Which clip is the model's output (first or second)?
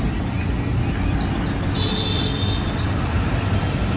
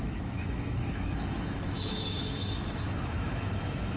second